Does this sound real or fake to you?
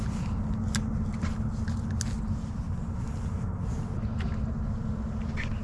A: real